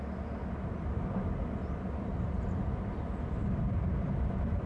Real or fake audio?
real